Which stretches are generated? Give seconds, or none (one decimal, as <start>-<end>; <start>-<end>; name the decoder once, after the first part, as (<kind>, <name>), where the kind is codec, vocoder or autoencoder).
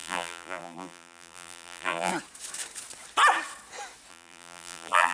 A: 0.0-2.1 (vocoder, BigVGAN v2); 4.1-5.1